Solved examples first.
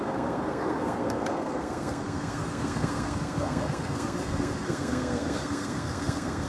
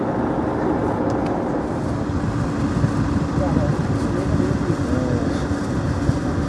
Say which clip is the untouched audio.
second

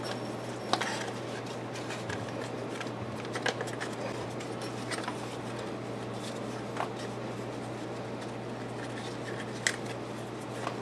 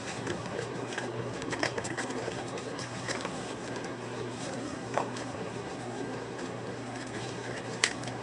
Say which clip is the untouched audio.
first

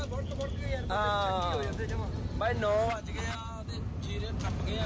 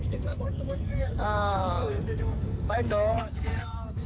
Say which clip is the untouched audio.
first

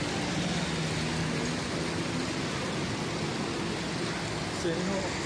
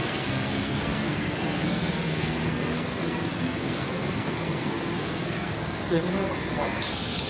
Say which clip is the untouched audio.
first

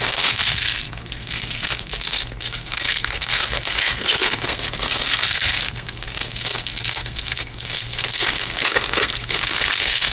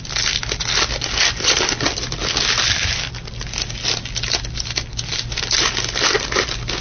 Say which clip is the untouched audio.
second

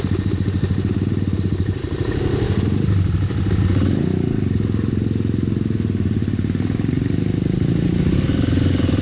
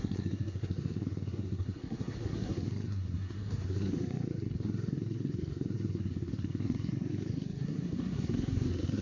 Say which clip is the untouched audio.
first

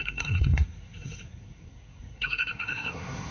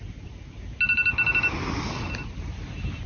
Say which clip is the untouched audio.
second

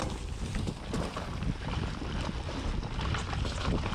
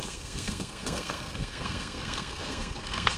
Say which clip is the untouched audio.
first